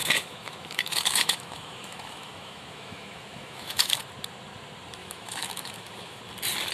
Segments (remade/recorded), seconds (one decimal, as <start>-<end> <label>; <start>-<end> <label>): 0.0-4.0 remade; 4.0-5.0 recorded; 5.0-6.2 remade; 6.2-6.7 recorded